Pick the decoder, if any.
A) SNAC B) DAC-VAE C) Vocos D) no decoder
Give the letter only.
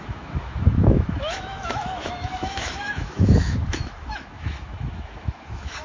B